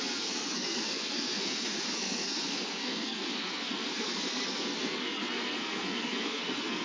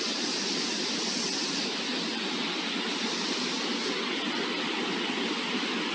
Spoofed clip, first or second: first